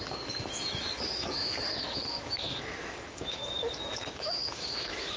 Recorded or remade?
remade